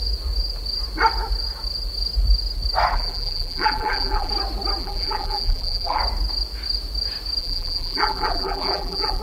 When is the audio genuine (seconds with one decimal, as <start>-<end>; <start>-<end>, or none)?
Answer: 0.0-2.9; 4.3-4.8; 6.0-7.4